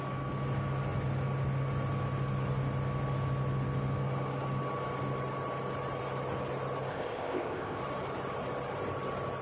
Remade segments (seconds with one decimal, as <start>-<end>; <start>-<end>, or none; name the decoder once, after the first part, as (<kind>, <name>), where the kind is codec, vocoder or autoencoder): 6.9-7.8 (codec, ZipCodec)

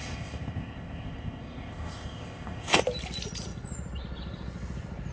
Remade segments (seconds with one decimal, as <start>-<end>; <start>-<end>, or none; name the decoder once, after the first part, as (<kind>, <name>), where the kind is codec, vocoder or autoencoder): 0.0-2.8 (codec, ZipCodec)

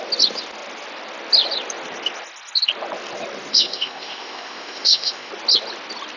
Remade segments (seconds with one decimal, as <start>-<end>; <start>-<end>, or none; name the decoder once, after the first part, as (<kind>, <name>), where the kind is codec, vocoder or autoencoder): 3.5-5.3 (codec, ZipCodec)

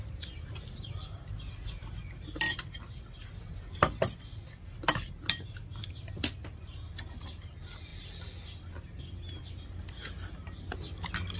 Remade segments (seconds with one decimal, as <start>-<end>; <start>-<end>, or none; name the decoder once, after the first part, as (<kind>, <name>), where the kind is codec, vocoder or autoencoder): none

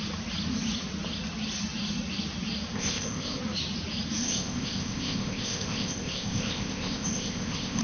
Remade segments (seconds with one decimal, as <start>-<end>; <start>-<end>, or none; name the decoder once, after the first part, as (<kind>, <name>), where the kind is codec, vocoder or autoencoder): 2.7-3.4 (codec, ZipCodec); 4.2-7.8

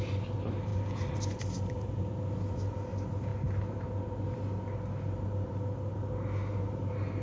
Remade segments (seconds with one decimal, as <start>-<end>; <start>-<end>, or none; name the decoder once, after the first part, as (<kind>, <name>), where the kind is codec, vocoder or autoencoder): none

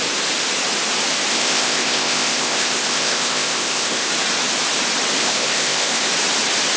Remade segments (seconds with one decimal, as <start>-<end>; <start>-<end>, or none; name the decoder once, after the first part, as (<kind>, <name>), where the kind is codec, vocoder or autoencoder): 1.3-4.1 (codec, ZipCodec); 5.2-6.1